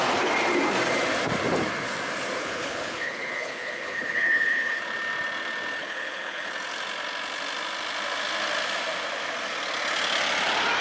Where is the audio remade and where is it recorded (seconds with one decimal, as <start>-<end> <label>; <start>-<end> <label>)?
0.0-2.4 recorded; 2.4-4.8 remade; 4.8-5.8 recorded; 5.8-6.5 remade; 6.5-10.8 recorded